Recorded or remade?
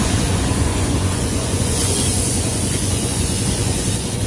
remade